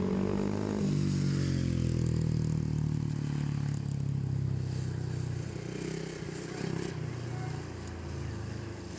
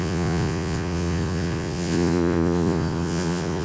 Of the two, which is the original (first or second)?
first